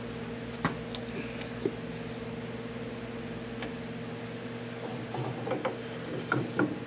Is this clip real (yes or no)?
yes